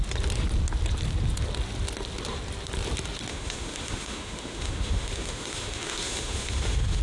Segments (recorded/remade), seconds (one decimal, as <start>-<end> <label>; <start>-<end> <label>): 0.0-3.3 recorded; 3.3-7.0 remade